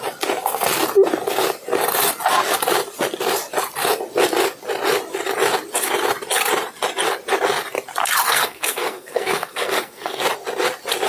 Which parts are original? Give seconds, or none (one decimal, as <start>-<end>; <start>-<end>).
0.0-8.3; 10.2-11.1